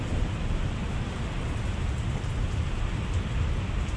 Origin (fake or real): real